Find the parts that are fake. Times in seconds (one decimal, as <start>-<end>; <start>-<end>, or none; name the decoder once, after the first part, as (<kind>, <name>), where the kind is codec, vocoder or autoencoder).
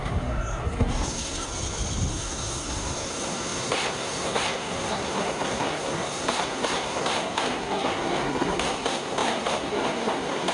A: 0.0-1.5 (codec, SNAC); 2.1-10.5